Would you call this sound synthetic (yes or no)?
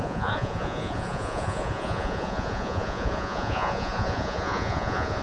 yes